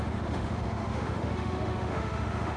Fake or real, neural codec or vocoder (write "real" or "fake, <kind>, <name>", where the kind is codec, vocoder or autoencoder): fake, autoencoder, DAC-VAE